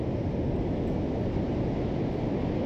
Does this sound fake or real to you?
real